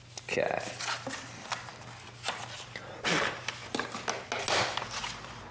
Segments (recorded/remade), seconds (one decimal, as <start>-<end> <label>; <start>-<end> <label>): 0.0-5.5 recorded